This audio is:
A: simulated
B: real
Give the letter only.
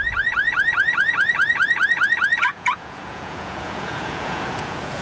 A